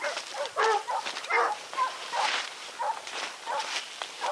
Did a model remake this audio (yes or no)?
no